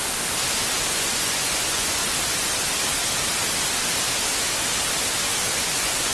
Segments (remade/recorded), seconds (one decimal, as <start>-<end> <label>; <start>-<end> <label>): 0.0-0.9 recorded; 0.9-2.0 remade; 2.0-5.5 recorded; 5.5-6.1 remade